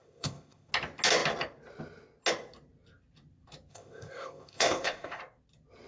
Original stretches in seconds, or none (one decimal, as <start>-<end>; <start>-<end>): 0.7-3.7; 5.2-5.9